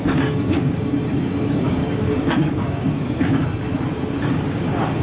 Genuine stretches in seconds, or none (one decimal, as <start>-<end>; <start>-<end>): 3.4-4.3